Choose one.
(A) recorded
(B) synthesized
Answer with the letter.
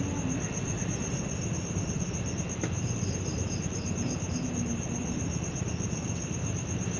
A